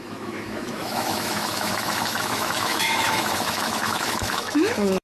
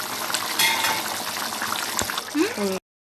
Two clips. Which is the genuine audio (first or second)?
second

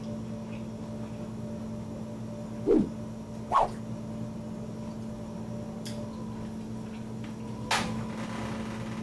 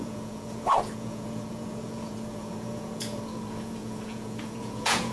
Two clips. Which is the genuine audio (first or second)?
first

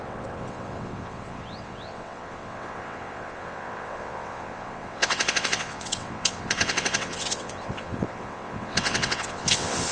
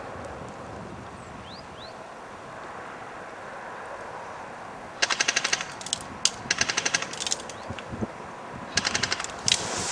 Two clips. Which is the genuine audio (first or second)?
second